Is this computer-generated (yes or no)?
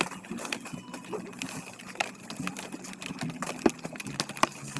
no